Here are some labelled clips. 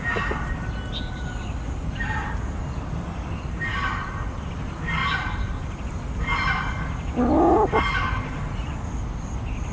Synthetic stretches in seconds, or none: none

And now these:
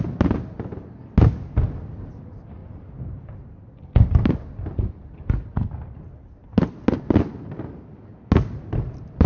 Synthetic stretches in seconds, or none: none

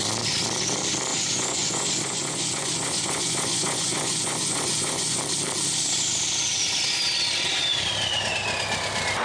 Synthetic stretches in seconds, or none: 1.1-5.2 (vocoder, Vocos)